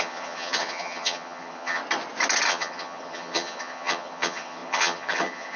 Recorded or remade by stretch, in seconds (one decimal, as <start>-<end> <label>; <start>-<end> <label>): 0.0-1.8 remade; 1.8-2.5 recorded; 2.5-5.6 remade